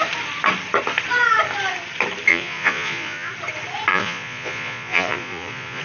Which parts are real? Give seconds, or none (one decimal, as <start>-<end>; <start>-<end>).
0.0-2.3; 3.3-3.9